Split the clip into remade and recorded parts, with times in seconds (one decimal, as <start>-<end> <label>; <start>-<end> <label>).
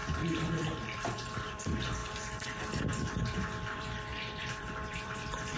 0.0-2.0 remade; 2.0-2.8 recorded; 2.8-5.6 remade